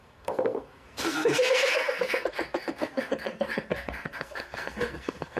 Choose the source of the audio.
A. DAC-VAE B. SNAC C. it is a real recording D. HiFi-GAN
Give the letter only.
B